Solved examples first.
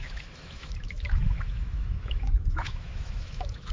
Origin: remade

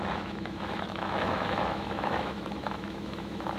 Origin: remade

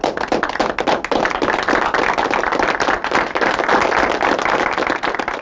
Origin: recorded